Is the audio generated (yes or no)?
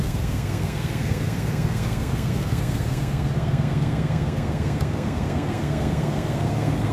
yes